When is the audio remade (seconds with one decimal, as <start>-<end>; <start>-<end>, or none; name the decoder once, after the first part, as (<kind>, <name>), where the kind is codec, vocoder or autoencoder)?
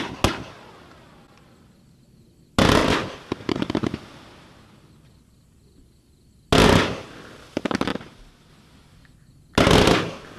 2.8-3.7 (vocoder, BigVGAN v2)